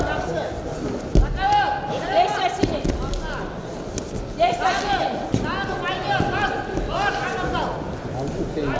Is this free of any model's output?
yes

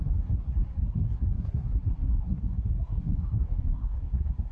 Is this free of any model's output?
no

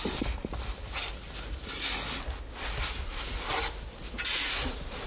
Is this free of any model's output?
yes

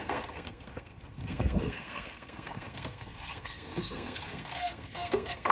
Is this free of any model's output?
no